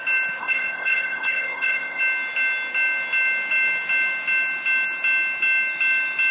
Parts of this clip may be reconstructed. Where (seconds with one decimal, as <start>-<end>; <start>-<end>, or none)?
0.4-2.0